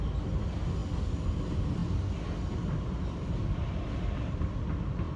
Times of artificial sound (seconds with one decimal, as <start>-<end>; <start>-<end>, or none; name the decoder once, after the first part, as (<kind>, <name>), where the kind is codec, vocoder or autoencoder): none